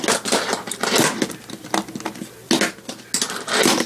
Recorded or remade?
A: recorded